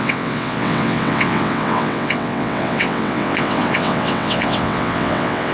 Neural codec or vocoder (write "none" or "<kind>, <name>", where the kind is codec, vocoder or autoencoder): vocoder, WaveNeXt